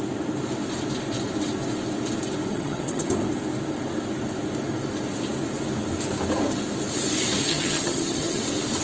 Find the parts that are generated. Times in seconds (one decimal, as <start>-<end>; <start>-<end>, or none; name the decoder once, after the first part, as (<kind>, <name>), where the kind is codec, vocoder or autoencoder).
2.5-3.1 (vocoder, HiFi-GAN); 7.5-8.4